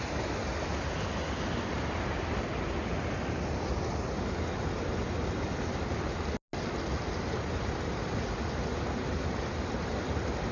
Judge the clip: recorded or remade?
recorded